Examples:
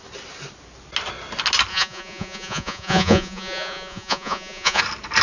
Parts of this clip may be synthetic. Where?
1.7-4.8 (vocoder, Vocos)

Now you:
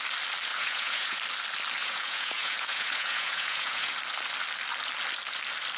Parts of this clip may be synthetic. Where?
0.5-1.2 (vocoder, Vocos); 1.8-3.9

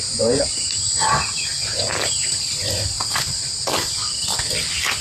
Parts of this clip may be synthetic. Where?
1.5-4.5 (vocoder, BigVGAN v2)